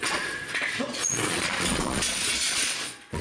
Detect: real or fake fake